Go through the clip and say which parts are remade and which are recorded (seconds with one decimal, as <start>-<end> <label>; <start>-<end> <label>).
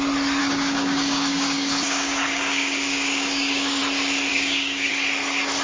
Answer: 0.0-0.4 recorded; 0.4-3.8 remade; 3.8-4.3 recorded; 4.3-4.9 remade; 4.9-5.6 recorded